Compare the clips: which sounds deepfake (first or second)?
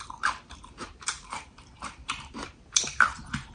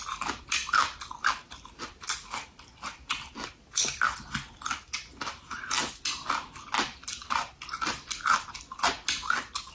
first